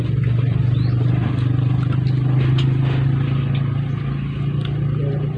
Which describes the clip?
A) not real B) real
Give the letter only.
B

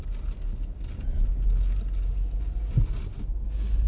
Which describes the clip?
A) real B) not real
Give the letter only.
A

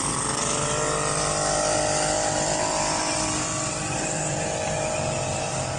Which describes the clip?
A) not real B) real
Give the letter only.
B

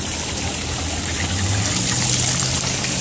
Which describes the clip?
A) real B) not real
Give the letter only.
A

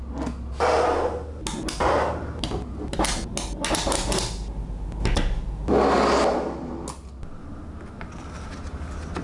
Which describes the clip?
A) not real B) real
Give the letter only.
B